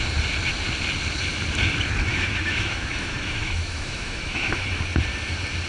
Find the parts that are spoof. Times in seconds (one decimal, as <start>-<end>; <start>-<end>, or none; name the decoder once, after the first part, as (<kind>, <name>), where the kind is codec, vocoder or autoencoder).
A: 2.1-4.8 (autoencoder, DAC-VAE)